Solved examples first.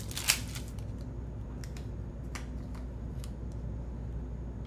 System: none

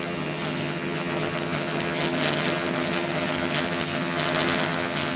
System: vocoder, HiFi-GAN